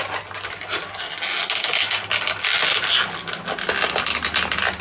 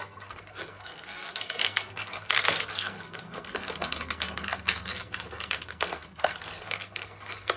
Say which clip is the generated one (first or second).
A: second